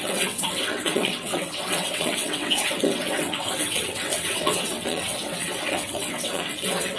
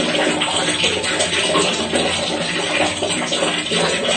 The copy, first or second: first